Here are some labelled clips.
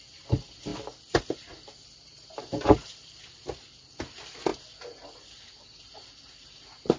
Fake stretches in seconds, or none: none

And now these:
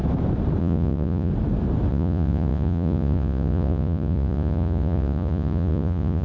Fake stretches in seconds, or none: 0.6-1.3; 1.9-6.2